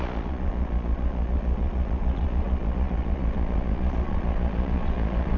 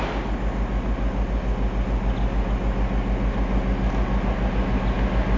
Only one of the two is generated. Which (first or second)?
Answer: first